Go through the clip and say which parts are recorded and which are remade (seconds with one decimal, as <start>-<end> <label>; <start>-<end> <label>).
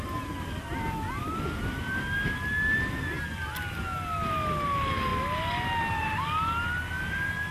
0.0-7.5 recorded